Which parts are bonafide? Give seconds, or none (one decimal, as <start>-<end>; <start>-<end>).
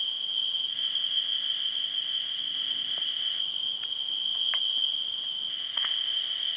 0.0-0.7; 3.4-5.5